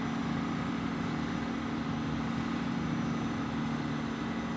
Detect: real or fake real